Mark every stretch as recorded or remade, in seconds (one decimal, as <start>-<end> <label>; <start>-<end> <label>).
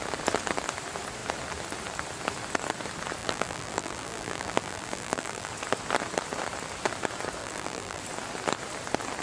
0.0-3.2 recorded; 3.2-5.5 remade; 5.5-7.4 recorded; 7.4-8.0 remade; 8.0-9.2 recorded